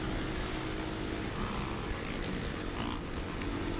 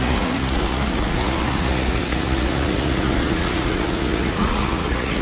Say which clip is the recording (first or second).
first